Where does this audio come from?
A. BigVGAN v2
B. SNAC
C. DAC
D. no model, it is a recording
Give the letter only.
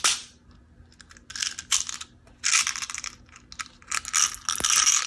D